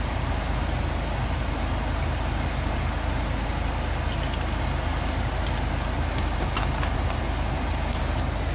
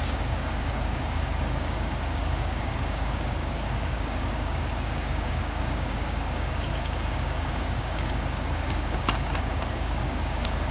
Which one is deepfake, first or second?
second